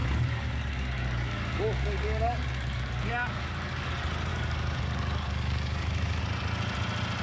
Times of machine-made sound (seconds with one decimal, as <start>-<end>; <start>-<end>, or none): 0.0-3.9; 4.3-6.2

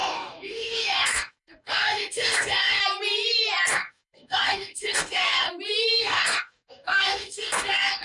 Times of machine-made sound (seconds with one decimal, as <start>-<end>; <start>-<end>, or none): 0.0-2.8; 3.7-5.5; 6.0-8.0

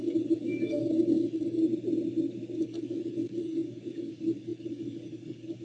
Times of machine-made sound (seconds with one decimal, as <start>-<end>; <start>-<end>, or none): 0.0-1.6; 2.6-5.6

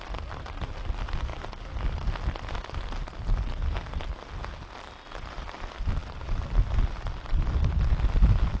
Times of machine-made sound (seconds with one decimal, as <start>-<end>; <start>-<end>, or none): none

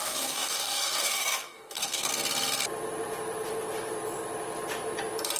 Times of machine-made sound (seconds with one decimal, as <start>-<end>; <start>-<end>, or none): 0.0-2.1